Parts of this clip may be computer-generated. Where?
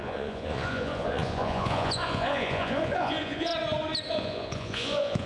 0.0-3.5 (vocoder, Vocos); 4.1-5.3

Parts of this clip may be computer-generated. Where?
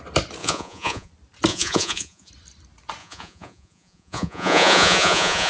0.4-1.1 (vocoder, Vocos); 1.5-2.3; 3.0-5.5